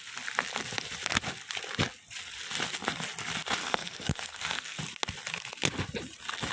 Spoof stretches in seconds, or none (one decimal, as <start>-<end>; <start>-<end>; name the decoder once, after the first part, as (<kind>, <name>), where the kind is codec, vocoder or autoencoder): 3.6-4.8 (codec, SNAC)